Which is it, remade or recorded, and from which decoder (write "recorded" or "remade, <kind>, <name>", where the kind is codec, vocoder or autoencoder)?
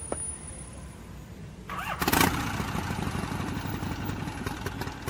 recorded